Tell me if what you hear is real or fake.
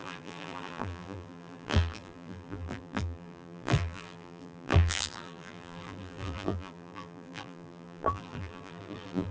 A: fake